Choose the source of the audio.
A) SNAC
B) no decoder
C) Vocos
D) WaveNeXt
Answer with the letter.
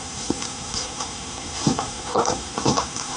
A